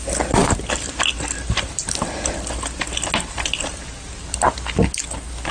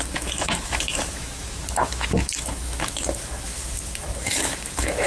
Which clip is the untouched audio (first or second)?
first